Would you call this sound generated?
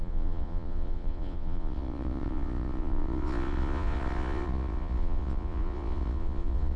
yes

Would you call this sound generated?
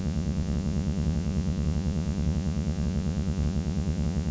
yes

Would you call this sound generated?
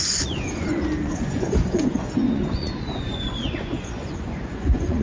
yes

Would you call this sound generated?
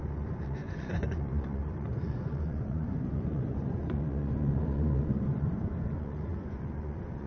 yes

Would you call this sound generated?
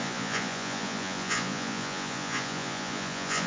yes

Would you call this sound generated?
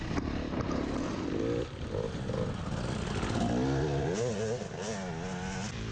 no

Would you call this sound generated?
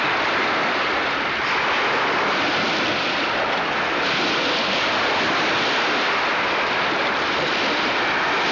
no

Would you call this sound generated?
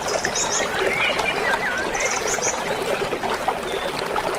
no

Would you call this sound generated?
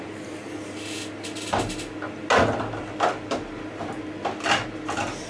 no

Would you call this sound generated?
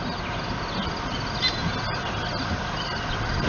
no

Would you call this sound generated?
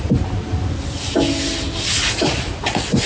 no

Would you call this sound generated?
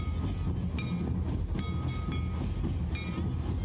no